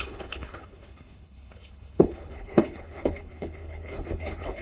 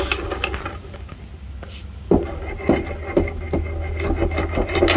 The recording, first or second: second